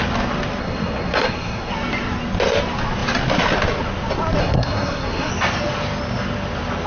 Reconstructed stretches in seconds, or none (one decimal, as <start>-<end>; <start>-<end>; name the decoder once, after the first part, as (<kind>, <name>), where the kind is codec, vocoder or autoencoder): 0.6-1.7 (codec, SNAC); 4.4-5.3